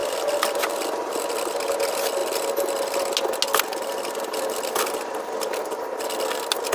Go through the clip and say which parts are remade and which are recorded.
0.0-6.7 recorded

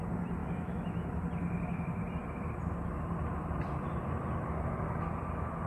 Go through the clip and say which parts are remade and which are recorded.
0.0-0.4 recorded; 0.4-1.1 remade; 1.1-5.7 recorded

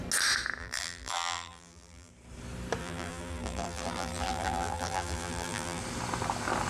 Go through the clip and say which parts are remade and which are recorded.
0.0-0.6 recorded; 0.6-2.1 remade; 2.1-2.8 recorded; 2.8-5.8 remade; 5.8-6.7 recorded

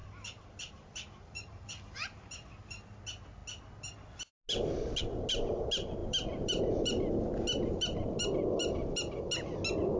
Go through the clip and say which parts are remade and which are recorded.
0.0-2.7 remade; 2.7-6.0 recorded; 6.0-7.3 remade; 7.3-10.0 recorded

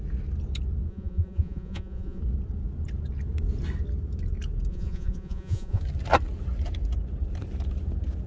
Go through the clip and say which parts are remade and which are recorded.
0.0-0.9 recorded; 0.9-2.2 remade; 2.2-4.7 recorded; 4.7-5.8 remade; 5.8-8.3 recorded